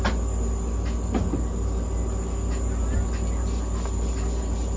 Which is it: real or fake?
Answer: real